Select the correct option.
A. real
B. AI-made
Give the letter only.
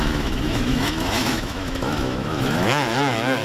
B